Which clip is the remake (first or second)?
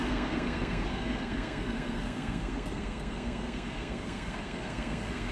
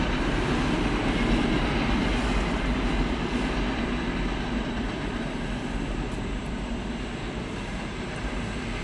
first